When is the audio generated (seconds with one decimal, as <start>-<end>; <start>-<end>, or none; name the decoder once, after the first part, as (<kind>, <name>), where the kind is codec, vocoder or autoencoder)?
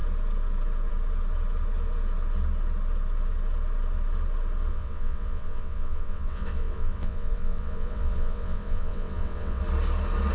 4.7-9.6 (vocoder, WaveNeXt)